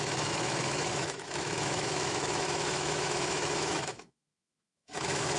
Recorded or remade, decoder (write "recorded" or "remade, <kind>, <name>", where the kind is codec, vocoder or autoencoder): remade, autoencoder, DAC-VAE